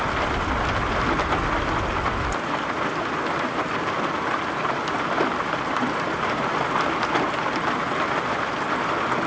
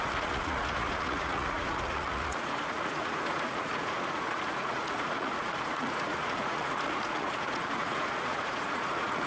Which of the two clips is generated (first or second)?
second